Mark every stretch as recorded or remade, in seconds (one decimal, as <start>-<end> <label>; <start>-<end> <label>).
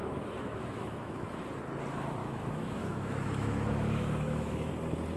0.0-1.4 remade; 1.4-2.2 recorded; 2.2-4.7 remade; 4.7-5.2 recorded